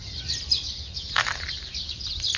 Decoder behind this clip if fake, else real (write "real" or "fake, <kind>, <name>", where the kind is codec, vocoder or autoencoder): fake, vocoder, BigVGAN v2